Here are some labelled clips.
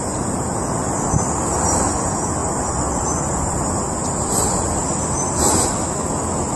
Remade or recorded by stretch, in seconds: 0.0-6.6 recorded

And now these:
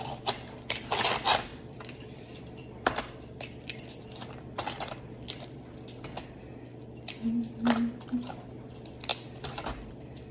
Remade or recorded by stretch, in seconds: 0.0-1.5 recorded; 1.5-5.0 remade; 5.0-10.3 recorded

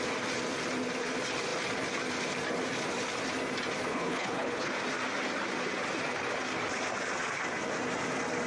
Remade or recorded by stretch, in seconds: 0.0-3.9 recorded; 3.9-4.7 remade; 4.7-8.5 recorded